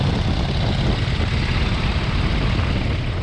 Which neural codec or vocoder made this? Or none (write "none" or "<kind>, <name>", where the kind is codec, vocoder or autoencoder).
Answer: none